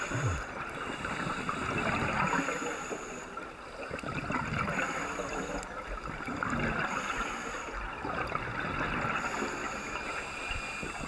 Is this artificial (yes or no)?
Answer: no